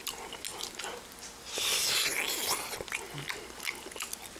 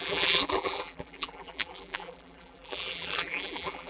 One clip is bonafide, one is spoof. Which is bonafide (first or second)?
first